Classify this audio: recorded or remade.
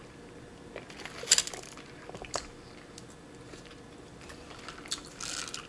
recorded